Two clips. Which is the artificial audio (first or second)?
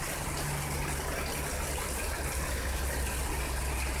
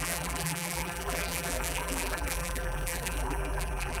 second